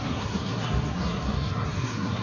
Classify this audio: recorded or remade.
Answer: remade